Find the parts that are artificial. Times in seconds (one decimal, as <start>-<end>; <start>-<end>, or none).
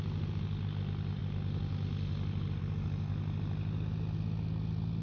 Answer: none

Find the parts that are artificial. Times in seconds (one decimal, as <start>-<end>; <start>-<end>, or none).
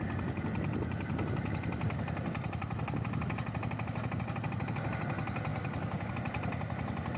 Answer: 5.5-6.1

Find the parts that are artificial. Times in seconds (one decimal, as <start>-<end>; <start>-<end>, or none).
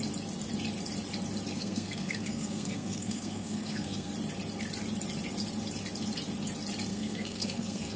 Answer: 1.5-4.1; 6.9-8.0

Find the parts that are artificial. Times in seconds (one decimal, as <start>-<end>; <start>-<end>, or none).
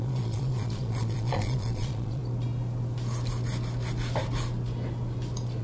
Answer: 0.0-2.2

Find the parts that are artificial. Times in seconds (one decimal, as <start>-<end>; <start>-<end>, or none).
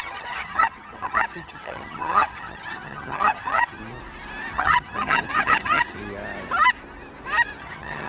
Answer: 0.0-3.8; 4.5-6.0; 7.6-8.1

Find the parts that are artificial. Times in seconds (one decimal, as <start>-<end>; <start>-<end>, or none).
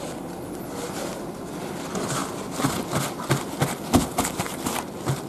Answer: none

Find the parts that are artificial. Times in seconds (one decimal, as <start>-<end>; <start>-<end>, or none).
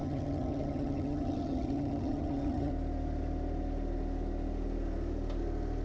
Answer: 0.0-2.7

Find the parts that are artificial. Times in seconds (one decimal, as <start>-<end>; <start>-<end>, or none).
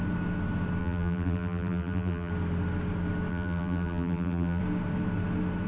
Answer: 0.8-2.3; 3.3-4.6